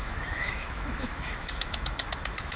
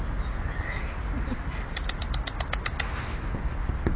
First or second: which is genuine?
second